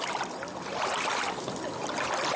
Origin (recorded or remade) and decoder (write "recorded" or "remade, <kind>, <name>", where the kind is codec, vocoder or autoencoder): recorded